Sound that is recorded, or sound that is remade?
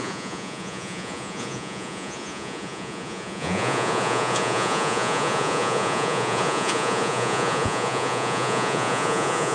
remade